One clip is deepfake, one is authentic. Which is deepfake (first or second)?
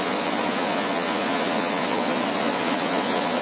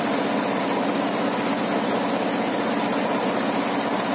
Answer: first